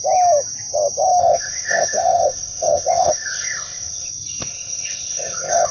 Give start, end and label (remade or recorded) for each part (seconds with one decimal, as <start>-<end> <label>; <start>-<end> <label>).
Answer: 0.0-1.2 recorded; 1.2-4.1 remade; 4.1-4.5 recorded; 4.5-5.7 remade

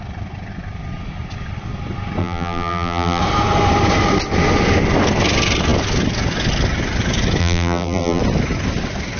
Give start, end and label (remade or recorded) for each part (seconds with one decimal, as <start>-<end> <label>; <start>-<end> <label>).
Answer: 0.0-2.2 recorded; 2.2-3.2 remade; 3.2-7.4 recorded; 7.4-8.2 remade; 8.2-9.2 recorded

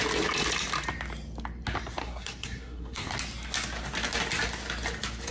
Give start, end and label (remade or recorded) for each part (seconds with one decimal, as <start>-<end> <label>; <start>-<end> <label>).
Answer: 0.0-2.0 recorded; 2.0-3.1 remade; 3.1-5.3 recorded

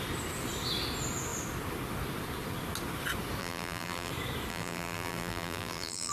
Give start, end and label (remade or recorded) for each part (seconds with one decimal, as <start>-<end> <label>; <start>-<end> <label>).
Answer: 0.0-3.4 recorded; 3.4-4.1 remade; 4.1-4.5 recorded; 4.5-6.1 remade

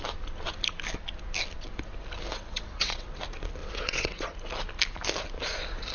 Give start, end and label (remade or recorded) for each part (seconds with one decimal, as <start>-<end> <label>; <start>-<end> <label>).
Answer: 0.0-2.3 recorded; 2.3-3.2 remade; 3.2-3.6 recorded; 3.6-4.2 remade; 4.2-5.9 recorded